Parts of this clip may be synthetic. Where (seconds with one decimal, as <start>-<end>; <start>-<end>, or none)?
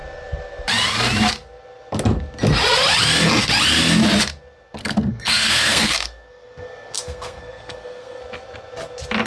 4.8-8.2